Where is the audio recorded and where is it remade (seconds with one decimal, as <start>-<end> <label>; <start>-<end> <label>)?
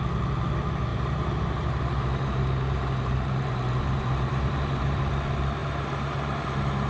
0.0-0.9 recorded; 0.9-5.0 remade; 5.0-5.6 recorded; 5.6-6.9 remade